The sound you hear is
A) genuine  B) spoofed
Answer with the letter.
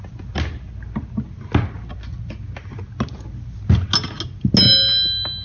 A